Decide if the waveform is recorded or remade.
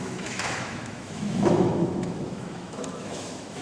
remade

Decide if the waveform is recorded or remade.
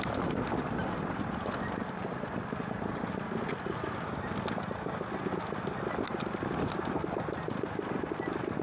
recorded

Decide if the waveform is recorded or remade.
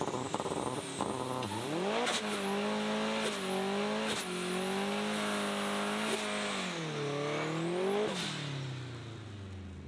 recorded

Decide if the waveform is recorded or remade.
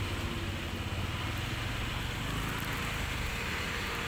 recorded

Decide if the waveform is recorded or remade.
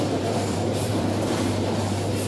remade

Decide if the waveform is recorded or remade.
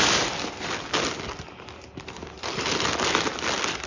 recorded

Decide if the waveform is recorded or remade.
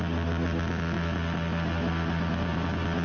recorded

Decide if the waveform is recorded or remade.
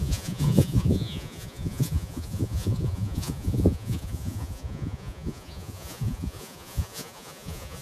remade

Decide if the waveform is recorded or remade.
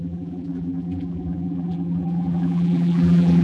remade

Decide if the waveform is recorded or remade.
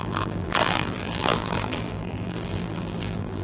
remade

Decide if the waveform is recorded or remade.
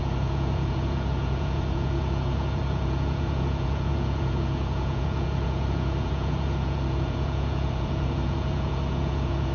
remade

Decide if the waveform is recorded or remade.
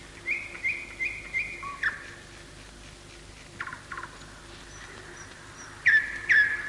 recorded